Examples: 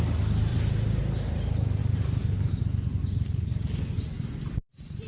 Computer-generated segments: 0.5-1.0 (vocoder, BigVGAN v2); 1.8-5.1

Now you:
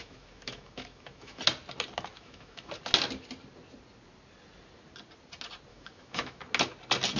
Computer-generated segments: 0.0-1.4 (autoencoder, DAC-VAE); 2.1-2.7; 5.7-6.4

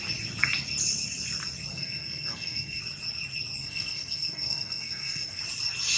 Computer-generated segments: 1.7-2.8 (codec, SNAC); 3.6-5.4

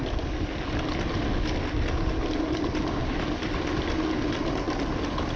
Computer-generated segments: none

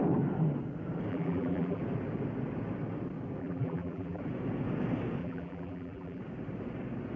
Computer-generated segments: 1.1-1.8 (vocoder, BigVGAN v2); 3.4-4.2; 5.2-6.2

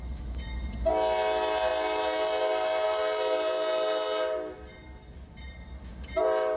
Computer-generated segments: none

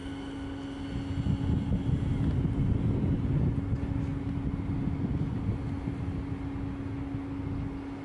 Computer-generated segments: none

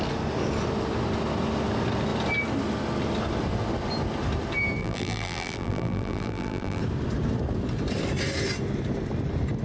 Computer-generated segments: 4.8-6.8 (vocoder, BigVGAN v2)